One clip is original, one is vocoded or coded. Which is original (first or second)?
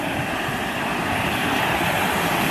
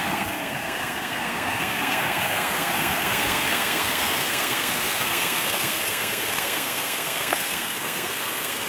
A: first